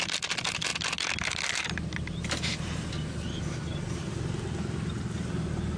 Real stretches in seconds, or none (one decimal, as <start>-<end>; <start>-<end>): 0.0-5.8